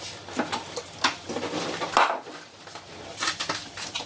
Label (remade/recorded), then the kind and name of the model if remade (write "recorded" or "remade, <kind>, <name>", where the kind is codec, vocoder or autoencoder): recorded